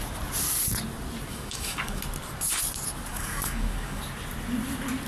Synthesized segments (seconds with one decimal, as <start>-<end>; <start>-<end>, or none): 1.3-2.0; 3.1-4.0